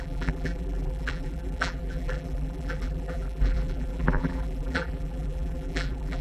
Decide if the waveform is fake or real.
fake